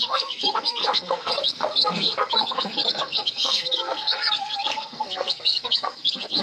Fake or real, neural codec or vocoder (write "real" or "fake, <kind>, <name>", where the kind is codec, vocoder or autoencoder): fake, codec, SNAC